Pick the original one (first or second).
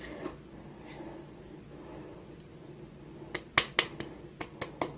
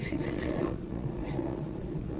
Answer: first